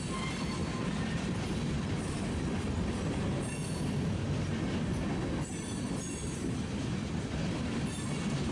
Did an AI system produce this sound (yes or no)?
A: no